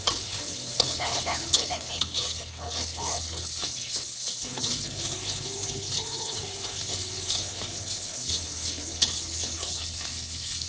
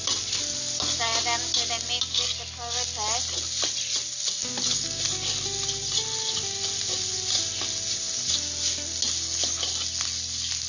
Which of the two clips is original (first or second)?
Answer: second